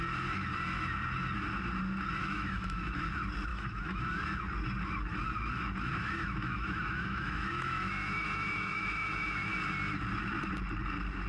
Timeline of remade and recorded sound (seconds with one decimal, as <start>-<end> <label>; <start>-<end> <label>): 0.0-2.2 recorded; 2.2-3.0 remade; 3.0-3.5 recorded; 3.5-4.0 remade; 4.0-6.0 recorded; 6.0-9.5 remade; 9.5-11.3 recorded